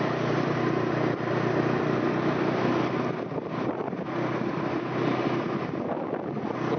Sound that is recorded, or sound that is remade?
recorded